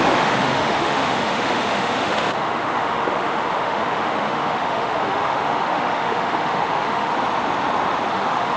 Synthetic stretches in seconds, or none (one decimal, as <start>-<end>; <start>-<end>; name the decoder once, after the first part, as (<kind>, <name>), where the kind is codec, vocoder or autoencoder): 0.0-7.1 (autoencoder, DAC-VAE); 8.1-8.6